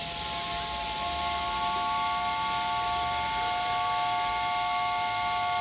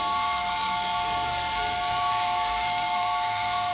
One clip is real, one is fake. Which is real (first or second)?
first